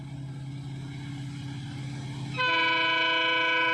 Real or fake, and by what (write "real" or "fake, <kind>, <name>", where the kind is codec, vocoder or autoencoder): real